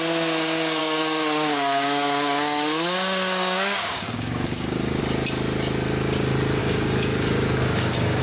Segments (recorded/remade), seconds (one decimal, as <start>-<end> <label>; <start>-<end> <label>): 0.0-0.8 recorded; 0.8-5.0 remade; 5.0-6.6 recorded; 6.6-8.2 remade